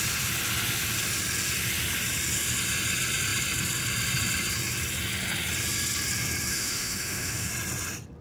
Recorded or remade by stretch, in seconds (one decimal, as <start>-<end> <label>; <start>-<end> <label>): 0.0-6.5 recorded; 6.5-7.5 remade; 7.5-8.2 recorded